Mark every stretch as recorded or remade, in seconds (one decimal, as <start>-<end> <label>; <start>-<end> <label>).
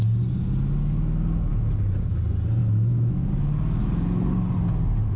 0.0-2.6 recorded; 2.6-3.3 remade; 3.3-5.2 recorded